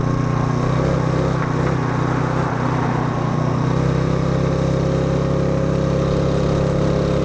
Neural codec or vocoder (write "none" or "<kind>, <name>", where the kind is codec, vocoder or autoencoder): none